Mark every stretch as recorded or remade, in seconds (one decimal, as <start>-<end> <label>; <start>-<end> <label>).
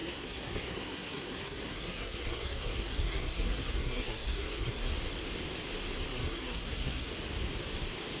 0.0-4.9 remade; 4.9-6.1 recorded; 6.1-7.1 remade; 7.1-8.2 recorded